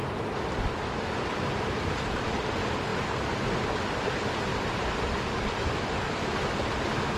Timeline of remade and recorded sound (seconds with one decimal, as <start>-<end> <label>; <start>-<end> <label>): 0.0-7.2 recorded